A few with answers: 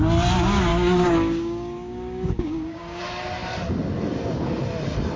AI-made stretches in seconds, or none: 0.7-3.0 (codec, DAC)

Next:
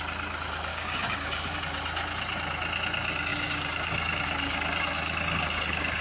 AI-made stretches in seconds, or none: 0.7-1.6 (codec, DAC); 3.3-6.0

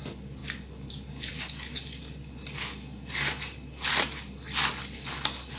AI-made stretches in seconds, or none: none

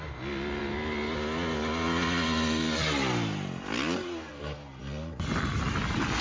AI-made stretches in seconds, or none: none